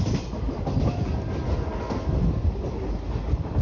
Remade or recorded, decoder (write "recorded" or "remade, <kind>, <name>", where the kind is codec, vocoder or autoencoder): recorded